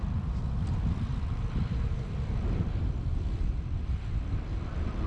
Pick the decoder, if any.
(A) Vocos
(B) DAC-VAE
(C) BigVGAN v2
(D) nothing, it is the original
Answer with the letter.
C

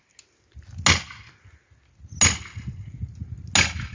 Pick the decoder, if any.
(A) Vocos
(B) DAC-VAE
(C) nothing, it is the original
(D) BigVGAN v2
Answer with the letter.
C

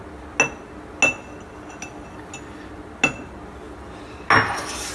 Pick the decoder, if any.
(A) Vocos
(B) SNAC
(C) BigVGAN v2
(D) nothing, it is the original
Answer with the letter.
D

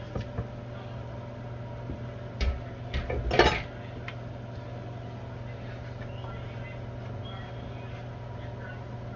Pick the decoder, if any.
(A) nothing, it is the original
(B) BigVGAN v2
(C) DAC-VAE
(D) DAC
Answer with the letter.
A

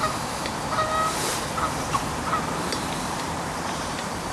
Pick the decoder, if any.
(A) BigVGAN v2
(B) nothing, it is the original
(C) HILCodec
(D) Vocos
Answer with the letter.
A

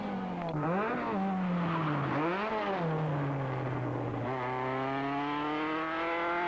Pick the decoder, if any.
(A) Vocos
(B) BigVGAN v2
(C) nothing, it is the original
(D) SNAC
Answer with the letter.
C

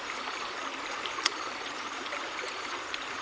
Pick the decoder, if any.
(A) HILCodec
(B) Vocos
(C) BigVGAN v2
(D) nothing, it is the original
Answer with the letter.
C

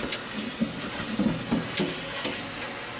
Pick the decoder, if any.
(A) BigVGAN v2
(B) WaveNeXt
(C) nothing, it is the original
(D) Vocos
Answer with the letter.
C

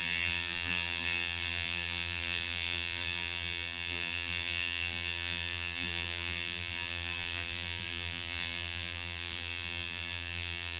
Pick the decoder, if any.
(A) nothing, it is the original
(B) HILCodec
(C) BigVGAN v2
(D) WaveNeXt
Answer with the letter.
C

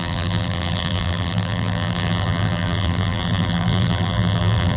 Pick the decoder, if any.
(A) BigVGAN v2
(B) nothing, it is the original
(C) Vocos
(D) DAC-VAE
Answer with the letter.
A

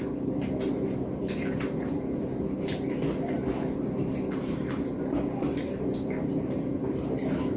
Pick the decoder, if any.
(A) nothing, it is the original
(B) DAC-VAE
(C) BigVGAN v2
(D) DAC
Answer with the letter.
A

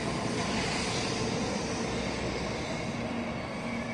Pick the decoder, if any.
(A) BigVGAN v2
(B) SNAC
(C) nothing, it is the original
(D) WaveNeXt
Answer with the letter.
C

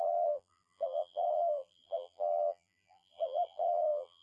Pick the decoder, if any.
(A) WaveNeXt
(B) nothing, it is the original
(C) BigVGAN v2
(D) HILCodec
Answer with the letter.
C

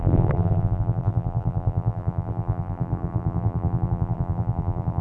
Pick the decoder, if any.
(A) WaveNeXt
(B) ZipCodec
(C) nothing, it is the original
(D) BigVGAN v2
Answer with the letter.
D